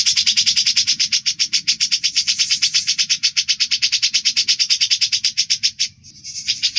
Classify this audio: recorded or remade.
remade